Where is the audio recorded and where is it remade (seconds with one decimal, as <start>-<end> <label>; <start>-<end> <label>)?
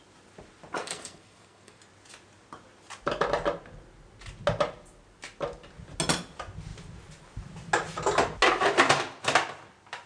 0.0-0.8 recorded; 0.8-1.8 remade; 1.8-10.1 recorded